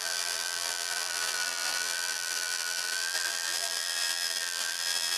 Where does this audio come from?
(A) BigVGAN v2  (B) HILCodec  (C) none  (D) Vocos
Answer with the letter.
A